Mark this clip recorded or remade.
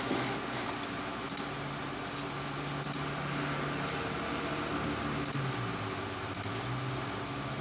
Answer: recorded